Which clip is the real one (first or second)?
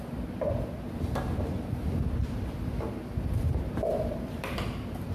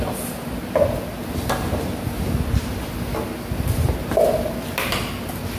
second